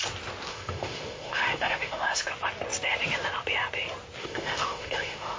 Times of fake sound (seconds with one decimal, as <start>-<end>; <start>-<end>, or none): 0.5-2.3; 4.2-5.4